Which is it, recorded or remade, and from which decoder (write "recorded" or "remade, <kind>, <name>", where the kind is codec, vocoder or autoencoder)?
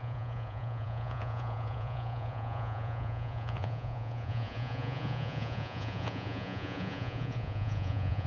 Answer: remade, vocoder, Vocos